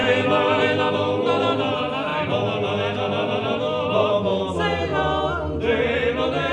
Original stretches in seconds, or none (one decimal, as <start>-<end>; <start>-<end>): 0.0-6.5